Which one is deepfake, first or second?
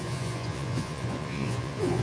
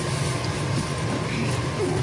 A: first